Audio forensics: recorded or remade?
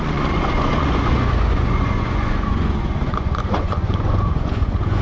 remade